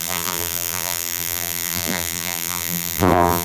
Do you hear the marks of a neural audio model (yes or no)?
yes